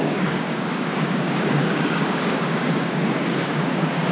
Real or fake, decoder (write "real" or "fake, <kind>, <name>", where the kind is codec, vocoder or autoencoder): fake, codec, DAC